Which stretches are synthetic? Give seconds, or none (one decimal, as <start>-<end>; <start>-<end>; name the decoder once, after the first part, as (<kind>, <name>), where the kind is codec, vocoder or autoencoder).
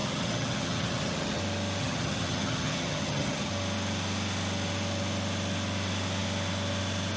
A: 0.0-1.4 (vocoder, HiFi-GAN); 1.8-3.5